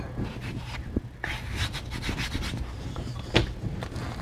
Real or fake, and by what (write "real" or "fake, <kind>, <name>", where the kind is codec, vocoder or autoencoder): real